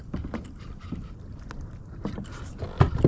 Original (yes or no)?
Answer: yes